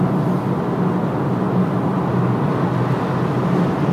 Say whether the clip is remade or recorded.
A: recorded